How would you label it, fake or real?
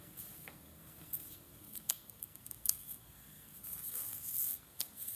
fake